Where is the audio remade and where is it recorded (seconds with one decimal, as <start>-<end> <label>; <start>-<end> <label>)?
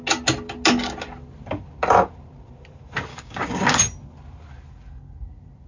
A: 0.0-3.1 recorded; 3.1-3.8 remade; 3.8-5.7 recorded